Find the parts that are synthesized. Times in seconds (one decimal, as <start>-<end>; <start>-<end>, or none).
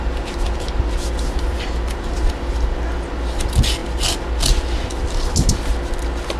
none